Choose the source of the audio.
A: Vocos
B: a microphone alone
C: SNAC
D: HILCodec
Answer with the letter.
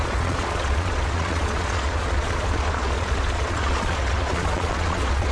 A